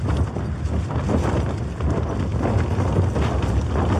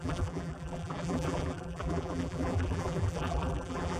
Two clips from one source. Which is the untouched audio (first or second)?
first